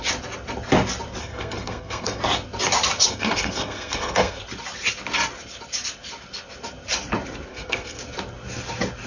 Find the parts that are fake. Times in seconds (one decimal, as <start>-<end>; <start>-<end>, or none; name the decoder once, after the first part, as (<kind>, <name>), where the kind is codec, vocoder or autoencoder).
1.2-2.2 (codec, SNAC); 3.1-4.4; 7.5-8.0